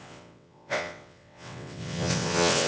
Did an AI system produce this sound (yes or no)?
yes